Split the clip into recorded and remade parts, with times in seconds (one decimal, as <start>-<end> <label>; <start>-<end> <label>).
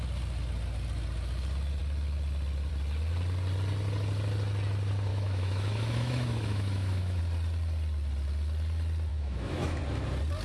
0.0-5.1 recorded; 5.1-7.2 remade; 7.2-9.1 recorded; 9.1-9.8 remade; 9.8-10.4 recorded